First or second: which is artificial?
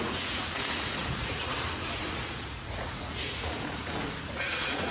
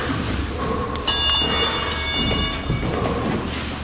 first